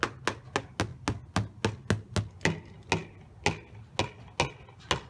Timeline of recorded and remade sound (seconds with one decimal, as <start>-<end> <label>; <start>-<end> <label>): 0.0-5.1 recorded

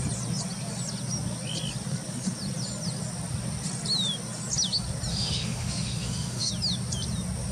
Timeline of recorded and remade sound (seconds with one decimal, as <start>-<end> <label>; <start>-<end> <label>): 0.0-5.1 recorded; 5.1-6.5 remade; 6.5-7.5 recorded

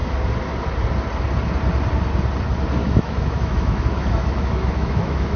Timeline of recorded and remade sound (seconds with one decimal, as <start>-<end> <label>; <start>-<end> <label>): 0.0-2.8 recorded; 2.8-5.4 remade

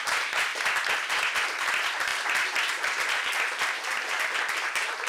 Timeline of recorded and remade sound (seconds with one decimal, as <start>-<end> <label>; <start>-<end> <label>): 0.0-5.1 recorded

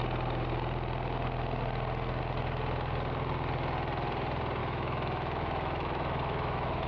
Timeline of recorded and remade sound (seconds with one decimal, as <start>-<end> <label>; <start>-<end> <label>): 0.0-4.6 recorded; 4.6-6.9 remade

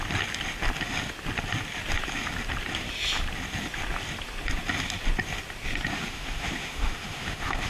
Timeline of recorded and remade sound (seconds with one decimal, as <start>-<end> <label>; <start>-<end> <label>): 0.0-5.9 recorded; 5.9-7.7 remade

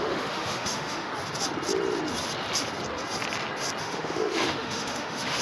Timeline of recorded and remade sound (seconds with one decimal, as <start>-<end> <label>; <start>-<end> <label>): 0.0-1.1 remade; 1.1-3.8 recorded; 3.8-5.4 remade

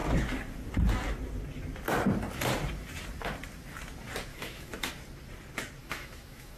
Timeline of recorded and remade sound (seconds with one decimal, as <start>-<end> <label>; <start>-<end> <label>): 0.0-4.3 recorded; 4.3-4.9 remade; 4.9-5.8 recorded; 5.8-6.6 remade